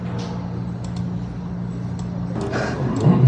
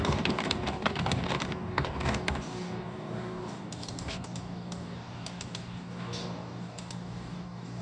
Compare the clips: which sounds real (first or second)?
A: first